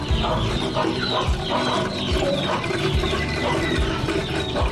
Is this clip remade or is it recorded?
recorded